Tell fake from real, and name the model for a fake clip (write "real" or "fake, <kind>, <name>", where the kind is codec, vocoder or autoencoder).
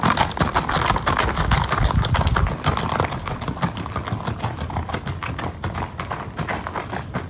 real